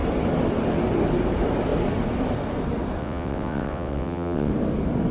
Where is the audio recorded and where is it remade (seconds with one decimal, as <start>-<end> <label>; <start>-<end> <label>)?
0.0-3.0 recorded; 3.0-4.5 remade; 4.5-5.1 recorded